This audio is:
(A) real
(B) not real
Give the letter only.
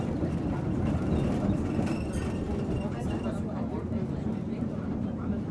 A